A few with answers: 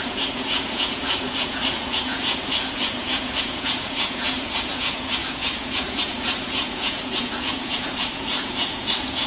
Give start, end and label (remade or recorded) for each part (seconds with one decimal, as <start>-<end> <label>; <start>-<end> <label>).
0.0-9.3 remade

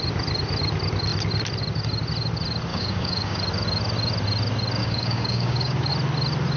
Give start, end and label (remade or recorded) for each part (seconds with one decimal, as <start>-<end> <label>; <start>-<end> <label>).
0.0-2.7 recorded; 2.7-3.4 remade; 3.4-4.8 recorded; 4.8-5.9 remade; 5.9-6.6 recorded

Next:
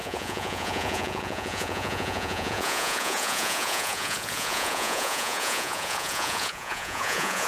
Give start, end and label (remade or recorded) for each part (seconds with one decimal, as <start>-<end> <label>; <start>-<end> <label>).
0.0-7.5 remade

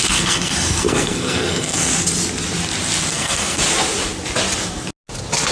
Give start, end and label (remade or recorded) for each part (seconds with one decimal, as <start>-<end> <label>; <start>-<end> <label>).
0.0-1.9 remade; 1.9-3.1 recorded; 3.1-3.6 remade; 3.6-5.5 recorded

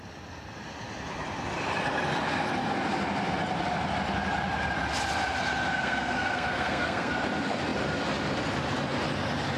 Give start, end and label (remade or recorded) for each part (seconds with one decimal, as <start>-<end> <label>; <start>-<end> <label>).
0.0-5.7 recorded; 5.7-7.1 remade; 7.1-9.6 recorded